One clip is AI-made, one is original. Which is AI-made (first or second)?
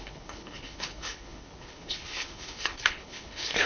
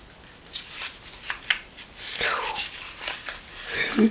first